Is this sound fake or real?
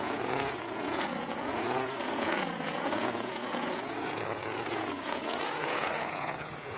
fake